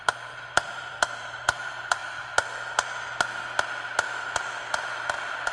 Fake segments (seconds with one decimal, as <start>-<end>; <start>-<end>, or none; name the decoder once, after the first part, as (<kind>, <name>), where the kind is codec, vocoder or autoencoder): 0.0-2.0 (vocoder, BigVGAN v2)